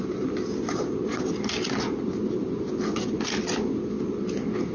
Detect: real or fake real